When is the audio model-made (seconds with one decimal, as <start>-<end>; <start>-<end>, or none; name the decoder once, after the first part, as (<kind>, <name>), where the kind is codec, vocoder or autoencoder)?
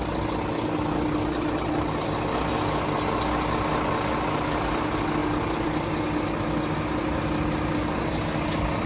none